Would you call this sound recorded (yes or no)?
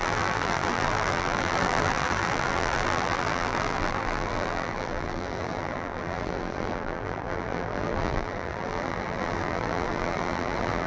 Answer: no